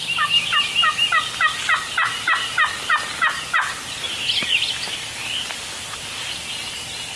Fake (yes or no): no